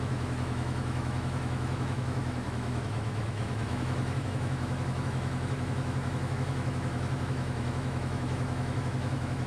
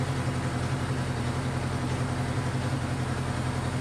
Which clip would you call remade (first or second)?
first